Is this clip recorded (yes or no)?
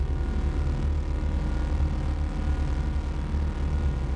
yes